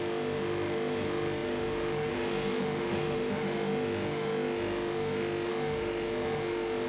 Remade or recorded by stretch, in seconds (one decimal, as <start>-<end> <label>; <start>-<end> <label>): 0.0-6.9 remade